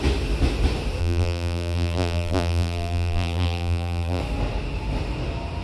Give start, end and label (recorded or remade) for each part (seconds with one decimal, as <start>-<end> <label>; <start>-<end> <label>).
0.0-1.0 recorded; 1.0-4.2 remade; 4.2-5.6 recorded